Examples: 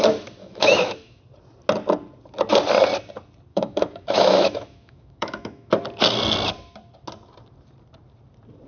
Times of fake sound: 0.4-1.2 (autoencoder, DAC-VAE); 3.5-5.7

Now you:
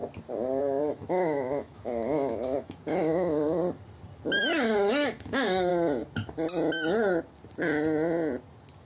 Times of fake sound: 0.6-3.6 (autoencoder, DAC-VAE); 4.4-5.7

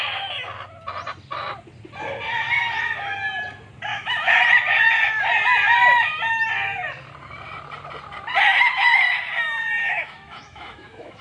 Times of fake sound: 3.9-4.4 (autoencoder, DAC-VAE); 9.8-11.2

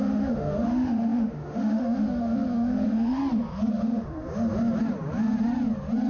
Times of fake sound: 0.0-3.2 (autoencoder, DAC-VAE); 3.7-4.3

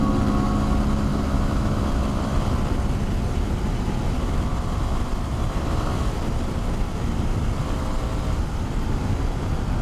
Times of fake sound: 1.1-1.9 (autoencoder, DAC-VAE)

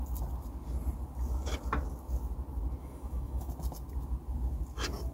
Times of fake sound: 2.8-3.5 (autoencoder, DAC-VAE)

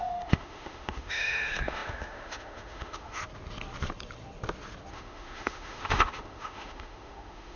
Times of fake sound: 0.0-3.2 (autoencoder, DAC-VAE); 4.9-7.6

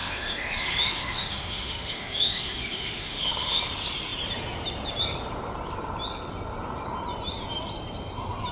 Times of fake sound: 0.0-3.6 (autoencoder, DAC-VAE)